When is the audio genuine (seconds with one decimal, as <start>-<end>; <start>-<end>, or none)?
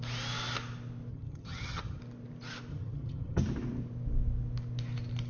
0.0-1.1; 2.0-2.7; 3.4-5.3